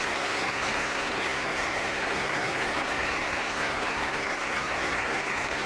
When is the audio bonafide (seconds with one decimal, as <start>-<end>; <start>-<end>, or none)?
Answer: none